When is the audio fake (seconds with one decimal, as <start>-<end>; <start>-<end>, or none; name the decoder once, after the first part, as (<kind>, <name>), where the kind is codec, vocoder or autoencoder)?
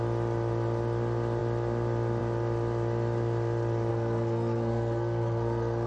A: 3.9-5.9 (codec, SNAC)